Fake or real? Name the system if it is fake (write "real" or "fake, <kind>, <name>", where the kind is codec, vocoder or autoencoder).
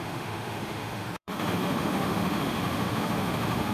fake, autoencoder, DAC-VAE